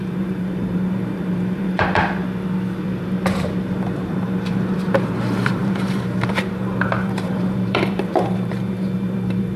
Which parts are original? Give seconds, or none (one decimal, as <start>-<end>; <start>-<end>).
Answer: 2.2-2.8